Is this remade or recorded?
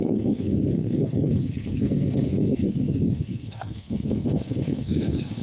remade